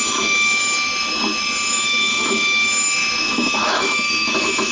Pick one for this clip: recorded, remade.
remade